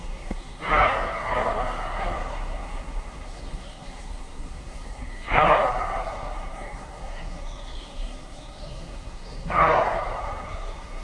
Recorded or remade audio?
remade